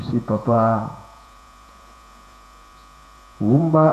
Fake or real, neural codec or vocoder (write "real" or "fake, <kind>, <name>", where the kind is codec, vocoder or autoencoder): fake, vocoder, Vocos